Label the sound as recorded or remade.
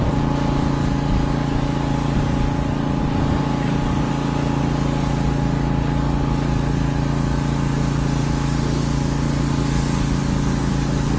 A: recorded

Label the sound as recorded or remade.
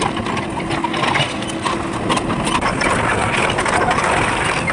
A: recorded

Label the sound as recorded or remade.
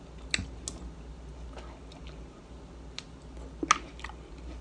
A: recorded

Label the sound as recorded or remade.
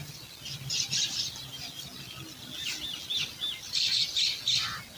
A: recorded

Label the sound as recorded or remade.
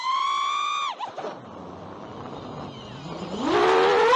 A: recorded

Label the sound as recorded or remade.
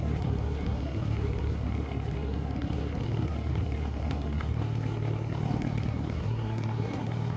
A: remade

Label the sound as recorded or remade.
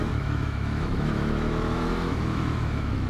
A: remade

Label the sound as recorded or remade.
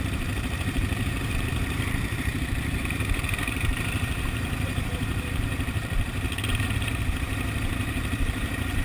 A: remade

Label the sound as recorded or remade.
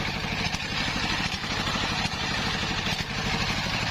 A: remade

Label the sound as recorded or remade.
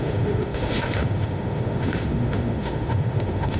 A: remade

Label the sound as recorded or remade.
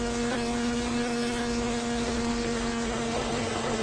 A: remade